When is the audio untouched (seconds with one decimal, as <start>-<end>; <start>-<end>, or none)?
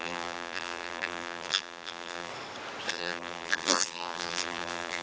2.3-2.9